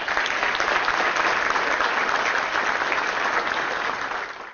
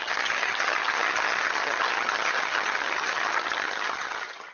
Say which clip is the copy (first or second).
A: second